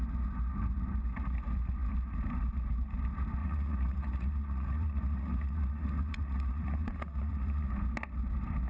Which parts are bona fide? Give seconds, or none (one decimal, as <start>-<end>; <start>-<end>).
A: 0.0-3.4; 7.7-8.7